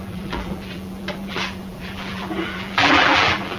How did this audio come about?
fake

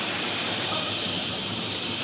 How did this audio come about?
fake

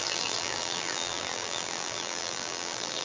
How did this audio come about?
fake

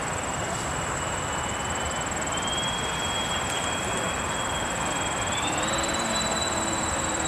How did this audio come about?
fake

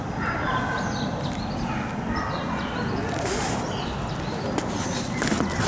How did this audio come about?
real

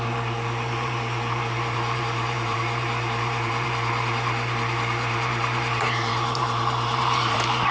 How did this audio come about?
fake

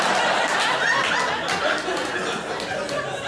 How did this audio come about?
real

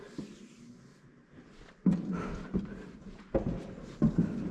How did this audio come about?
real